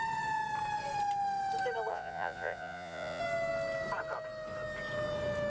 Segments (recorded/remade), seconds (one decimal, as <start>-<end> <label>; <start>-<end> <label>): 0.0-1.9 recorded; 1.9-3.2 remade; 3.2-5.5 recorded